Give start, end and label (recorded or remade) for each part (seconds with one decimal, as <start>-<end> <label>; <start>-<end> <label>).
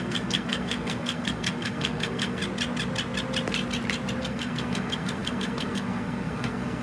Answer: 0.0-2.4 remade; 2.4-4.2 recorded; 4.2-6.8 remade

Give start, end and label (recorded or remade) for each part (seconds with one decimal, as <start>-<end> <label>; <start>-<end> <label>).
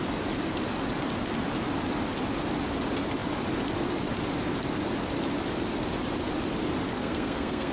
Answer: 0.0-6.9 recorded; 6.9-7.7 remade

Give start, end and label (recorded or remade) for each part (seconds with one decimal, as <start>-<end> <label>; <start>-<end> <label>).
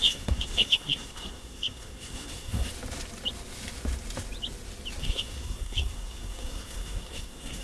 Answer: 0.0-2.7 remade; 2.7-5.0 recorded; 5.0-7.6 remade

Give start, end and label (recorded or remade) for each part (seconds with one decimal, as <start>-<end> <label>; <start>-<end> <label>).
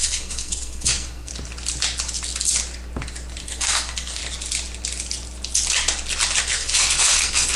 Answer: 0.0-1.3 remade; 1.3-3.4 recorded; 3.4-4.2 remade; 4.2-6.4 recorded; 6.4-7.6 remade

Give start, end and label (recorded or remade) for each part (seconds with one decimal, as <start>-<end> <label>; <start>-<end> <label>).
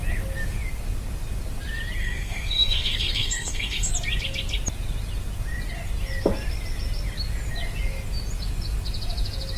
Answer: 0.0-2.0 recorded; 2.0-3.9 remade; 3.9-9.6 recorded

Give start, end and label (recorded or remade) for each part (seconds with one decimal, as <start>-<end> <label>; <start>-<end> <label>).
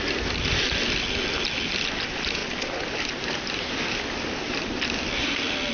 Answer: 0.0-5.7 recorded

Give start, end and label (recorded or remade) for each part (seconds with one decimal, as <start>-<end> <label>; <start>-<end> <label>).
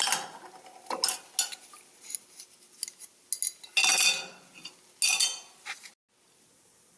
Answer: 0.0-7.0 recorded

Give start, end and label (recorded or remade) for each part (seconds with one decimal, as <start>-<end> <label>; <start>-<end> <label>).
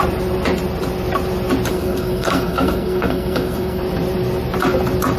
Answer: 0.0-1.7 recorded; 1.7-3.8 remade; 3.8-5.2 recorded